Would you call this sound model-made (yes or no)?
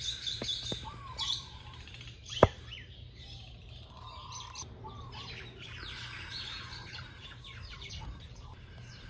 yes